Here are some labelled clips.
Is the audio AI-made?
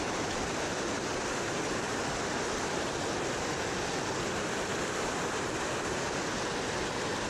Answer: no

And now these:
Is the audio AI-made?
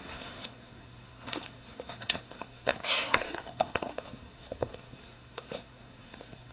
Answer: yes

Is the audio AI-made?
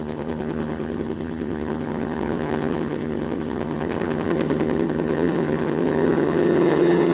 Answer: yes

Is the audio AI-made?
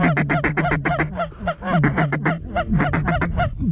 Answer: no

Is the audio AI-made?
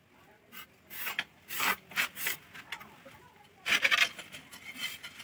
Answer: no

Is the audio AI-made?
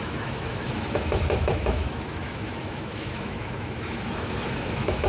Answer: yes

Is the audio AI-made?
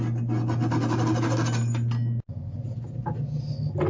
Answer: no